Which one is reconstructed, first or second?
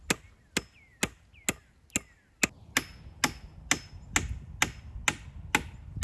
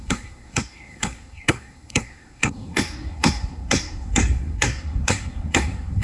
second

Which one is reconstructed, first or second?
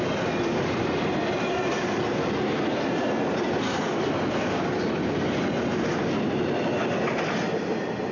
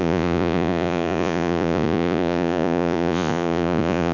second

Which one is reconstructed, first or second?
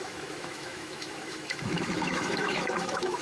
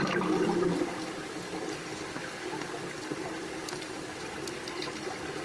first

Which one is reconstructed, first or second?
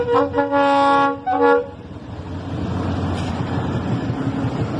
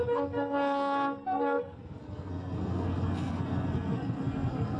second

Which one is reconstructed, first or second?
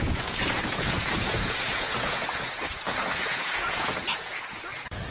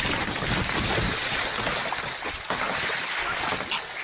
first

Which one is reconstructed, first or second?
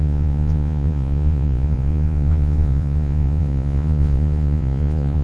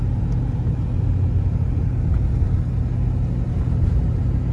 first